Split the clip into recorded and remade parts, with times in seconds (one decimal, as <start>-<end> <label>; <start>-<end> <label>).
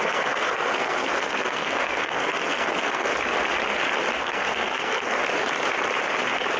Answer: 0.0-3.1 remade; 3.1-4.2 recorded; 4.2-5.2 remade; 5.2-6.6 recorded